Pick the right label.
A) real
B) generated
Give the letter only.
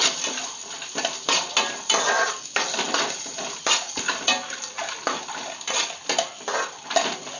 A